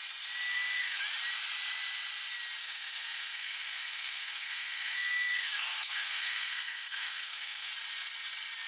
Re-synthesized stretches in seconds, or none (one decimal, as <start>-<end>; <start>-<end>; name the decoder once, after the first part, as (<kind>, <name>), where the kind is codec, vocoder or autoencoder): 0.5-1.0 (codec, SNAC); 2.6-7.7